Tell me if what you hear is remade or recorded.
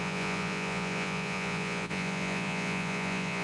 remade